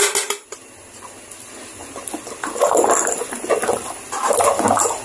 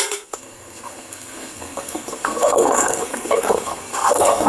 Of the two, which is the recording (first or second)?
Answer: first